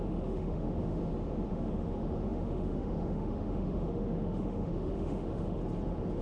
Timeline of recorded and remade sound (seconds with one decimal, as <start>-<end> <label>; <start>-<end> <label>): 0.0-1.0 remade; 1.0-1.5 recorded; 1.5-5.6 remade; 5.6-6.2 recorded